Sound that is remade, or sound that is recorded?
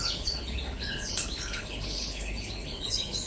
remade